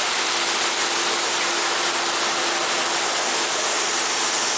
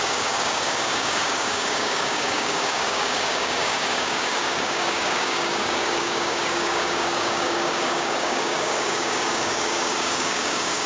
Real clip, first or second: first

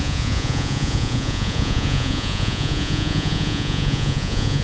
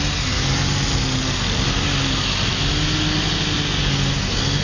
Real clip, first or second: second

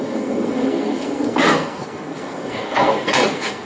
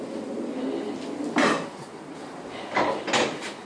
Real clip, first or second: second